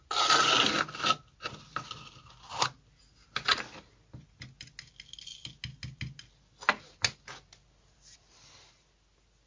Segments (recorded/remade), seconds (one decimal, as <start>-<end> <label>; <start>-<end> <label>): 0.0-9.5 recorded